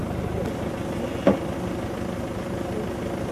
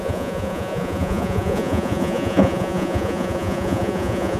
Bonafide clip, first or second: first